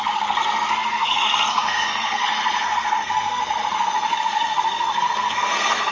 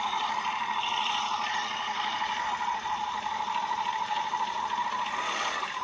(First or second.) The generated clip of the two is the first